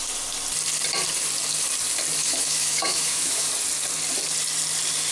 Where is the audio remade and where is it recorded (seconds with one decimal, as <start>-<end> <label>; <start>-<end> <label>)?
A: 0.0-2.2 recorded; 2.2-3.5 remade; 3.5-5.1 recorded